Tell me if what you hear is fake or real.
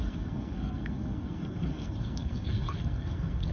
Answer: fake